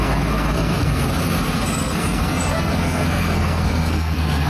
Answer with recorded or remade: remade